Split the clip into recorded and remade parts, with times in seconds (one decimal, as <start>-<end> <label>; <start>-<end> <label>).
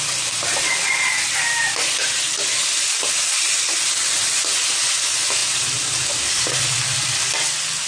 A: 0.0-7.9 recorded